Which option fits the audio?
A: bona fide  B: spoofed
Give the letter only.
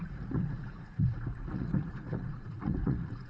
B